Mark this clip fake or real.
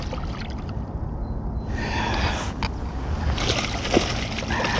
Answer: real